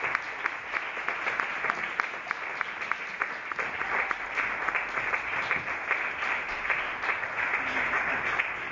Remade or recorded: recorded